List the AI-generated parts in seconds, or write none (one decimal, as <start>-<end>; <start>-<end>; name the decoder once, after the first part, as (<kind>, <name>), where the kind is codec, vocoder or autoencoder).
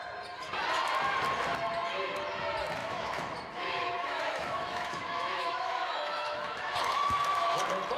2.8-7.6 (autoencoder, DAC-VAE)